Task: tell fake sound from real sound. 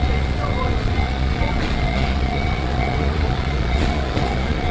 fake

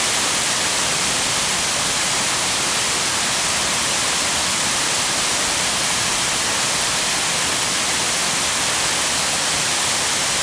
real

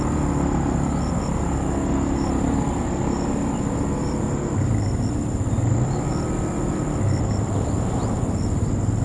real